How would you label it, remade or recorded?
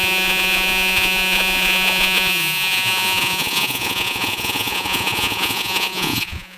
remade